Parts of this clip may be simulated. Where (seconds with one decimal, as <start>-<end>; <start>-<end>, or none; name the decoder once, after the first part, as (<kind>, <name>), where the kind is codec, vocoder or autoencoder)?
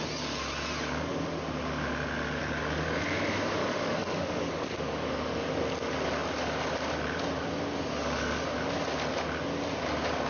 2.4-3.0 (codec, DAC); 3.6-5.5